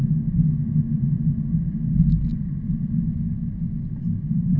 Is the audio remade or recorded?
recorded